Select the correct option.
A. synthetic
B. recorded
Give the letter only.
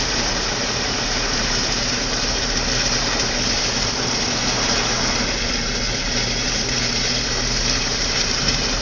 A